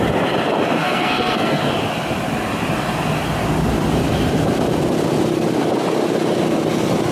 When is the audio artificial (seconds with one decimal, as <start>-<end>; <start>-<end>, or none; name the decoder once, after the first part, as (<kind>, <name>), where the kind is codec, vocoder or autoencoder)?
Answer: 0.8-1.6 (codec, SNAC)

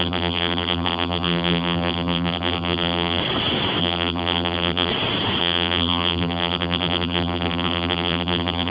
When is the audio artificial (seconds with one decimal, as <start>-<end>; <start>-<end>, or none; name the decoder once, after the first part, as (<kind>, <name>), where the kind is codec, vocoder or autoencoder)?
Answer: 0.0-3.2 (vocoder, BigVGAN v2); 3.8-4.9; 5.4-8.7

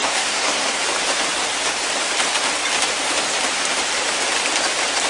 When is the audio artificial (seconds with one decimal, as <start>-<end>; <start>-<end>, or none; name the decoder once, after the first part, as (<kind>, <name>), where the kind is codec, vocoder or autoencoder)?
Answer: 0.0-0.8 (codec, SNAC)